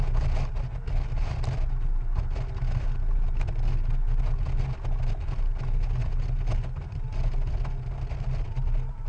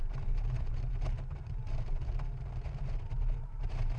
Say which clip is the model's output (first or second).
second